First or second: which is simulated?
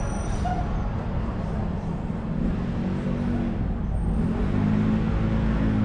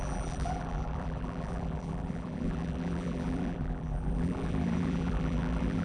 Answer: second